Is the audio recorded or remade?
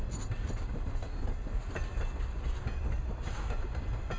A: recorded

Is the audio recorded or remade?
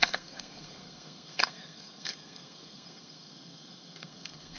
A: remade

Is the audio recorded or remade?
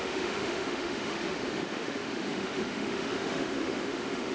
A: remade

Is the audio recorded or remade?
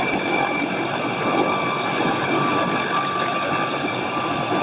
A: remade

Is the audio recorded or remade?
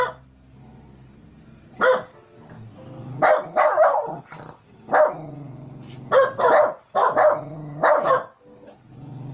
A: recorded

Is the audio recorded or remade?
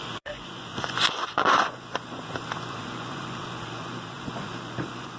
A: remade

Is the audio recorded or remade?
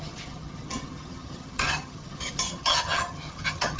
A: remade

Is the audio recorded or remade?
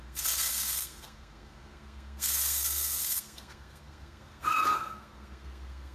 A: remade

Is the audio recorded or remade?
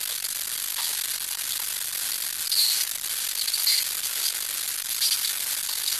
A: recorded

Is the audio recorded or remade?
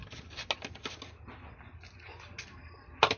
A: recorded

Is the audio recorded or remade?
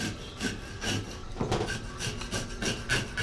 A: recorded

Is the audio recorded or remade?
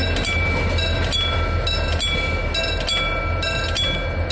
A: recorded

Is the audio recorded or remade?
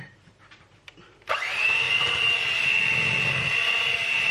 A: remade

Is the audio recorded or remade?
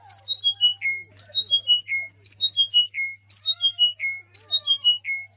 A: recorded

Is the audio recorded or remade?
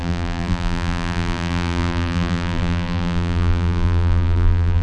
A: remade